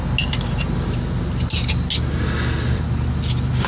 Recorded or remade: recorded